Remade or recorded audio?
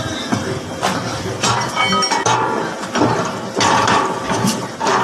recorded